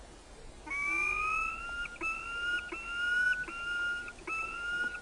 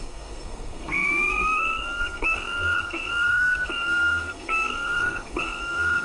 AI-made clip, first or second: second